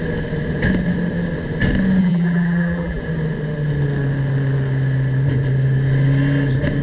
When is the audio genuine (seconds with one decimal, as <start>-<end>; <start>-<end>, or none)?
0.0-2.0; 3.0-6.8